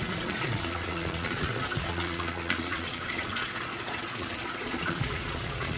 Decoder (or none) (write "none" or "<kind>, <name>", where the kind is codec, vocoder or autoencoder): vocoder, Vocos